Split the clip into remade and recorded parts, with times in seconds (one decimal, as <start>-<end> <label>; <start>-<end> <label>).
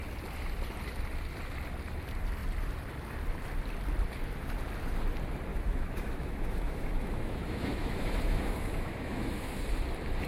0.0-5.5 recorded; 5.5-9.6 remade; 9.6-10.3 recorded